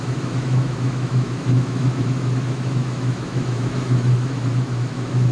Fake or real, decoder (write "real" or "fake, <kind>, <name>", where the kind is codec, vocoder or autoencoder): fake, autoencoder, DAC-VAE